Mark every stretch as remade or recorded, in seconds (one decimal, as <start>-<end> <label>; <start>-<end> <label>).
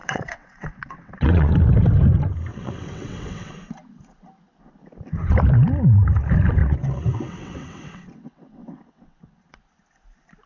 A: 0.0-1.5 remade; 1.5-2.5 recorded; 2.5-3.5 remade; 3.5-6.6 recorded; 6.6-9.6 remade; 9.6-10.5 recorded